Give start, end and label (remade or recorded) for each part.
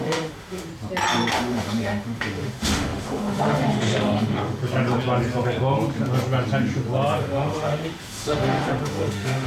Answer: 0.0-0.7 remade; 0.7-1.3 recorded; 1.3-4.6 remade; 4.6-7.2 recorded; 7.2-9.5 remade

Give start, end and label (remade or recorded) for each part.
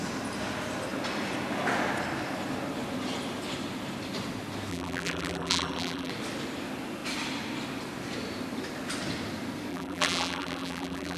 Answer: 0.0-4.7 recorded; 4.7-6.1 remade; 6.1-9.7 recorded; 9.7-11.2 remade